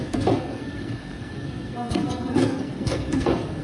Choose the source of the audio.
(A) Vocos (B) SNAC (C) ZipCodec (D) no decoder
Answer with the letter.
B